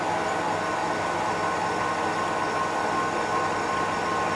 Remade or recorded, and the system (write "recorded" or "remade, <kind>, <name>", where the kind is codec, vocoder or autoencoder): recorded